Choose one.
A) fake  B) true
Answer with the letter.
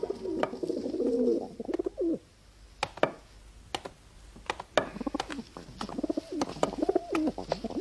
B